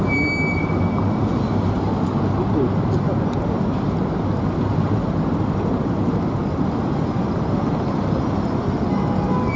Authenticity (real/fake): real